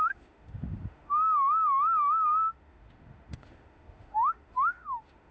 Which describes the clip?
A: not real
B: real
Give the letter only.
A